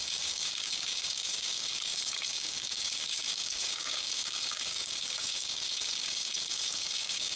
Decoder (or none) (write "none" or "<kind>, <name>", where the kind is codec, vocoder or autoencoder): codec, DAC